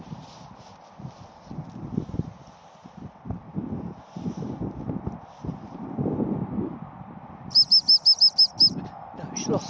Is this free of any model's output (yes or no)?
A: yes